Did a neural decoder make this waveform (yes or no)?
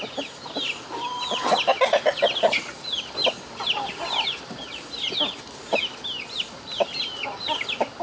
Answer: no